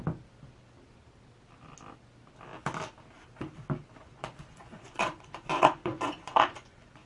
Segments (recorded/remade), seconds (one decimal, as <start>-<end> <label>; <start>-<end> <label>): 0.0-4.0 recorded; 4.0-7.1 remade

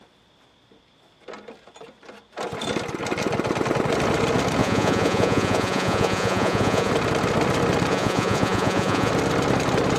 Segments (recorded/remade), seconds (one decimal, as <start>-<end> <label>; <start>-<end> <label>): 0.0-4.6 recorded; 4.6-6.9 remade; 6.9-7.9 recorded; 7.9-9.1 remade; 9.1-10.0 recorded

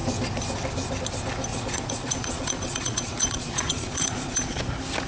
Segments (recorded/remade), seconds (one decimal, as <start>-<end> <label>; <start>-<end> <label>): 0.0-1.5 recorded; 1.5-4.6 remade; 4.6-5.1 recorded

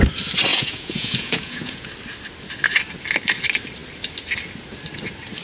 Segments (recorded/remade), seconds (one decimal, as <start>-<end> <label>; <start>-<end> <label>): 0.0-0.5 recorded; 0.5-1.9 remade; 1.9-5.4 recorded

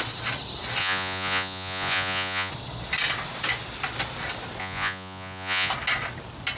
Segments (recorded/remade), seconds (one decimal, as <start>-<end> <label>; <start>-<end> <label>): 0.0-0.8 recorded; 0.8-2.5 remade; 2.5-4.6 recorded; 4.6-5.7 remade; 5.7-6.6 recorded